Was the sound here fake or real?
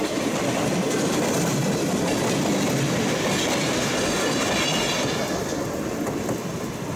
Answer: real